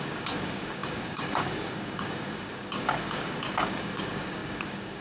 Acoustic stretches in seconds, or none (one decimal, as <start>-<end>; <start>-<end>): none